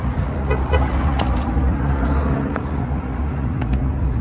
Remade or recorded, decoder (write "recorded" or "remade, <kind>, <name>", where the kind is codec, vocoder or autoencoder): remade, vocoder, Vocos